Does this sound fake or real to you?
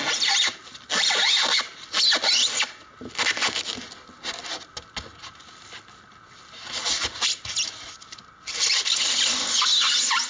real